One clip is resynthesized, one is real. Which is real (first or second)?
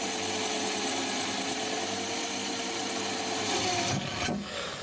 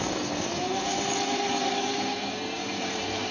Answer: first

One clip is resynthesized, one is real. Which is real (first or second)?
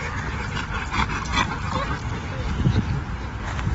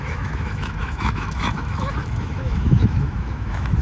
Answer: first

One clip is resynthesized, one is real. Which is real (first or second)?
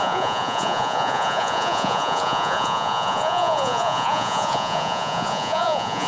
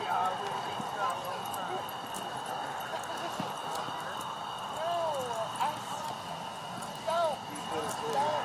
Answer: second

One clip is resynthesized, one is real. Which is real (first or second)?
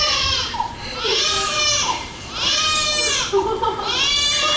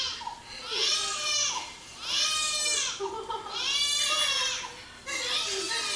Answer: second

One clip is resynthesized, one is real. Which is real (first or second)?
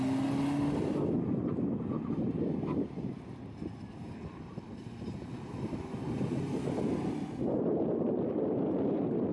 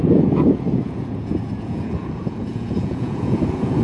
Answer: first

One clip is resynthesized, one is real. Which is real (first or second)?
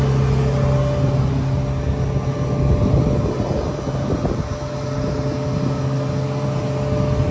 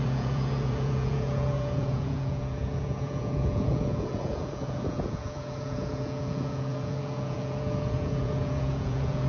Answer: first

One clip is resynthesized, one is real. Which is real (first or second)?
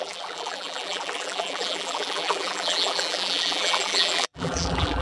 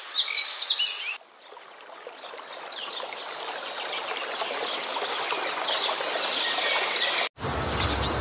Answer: second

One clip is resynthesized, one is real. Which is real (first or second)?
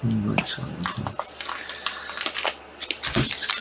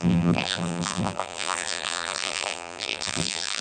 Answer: first